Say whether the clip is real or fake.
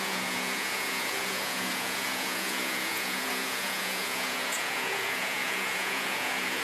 fake